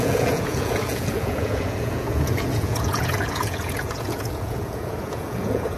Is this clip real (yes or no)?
no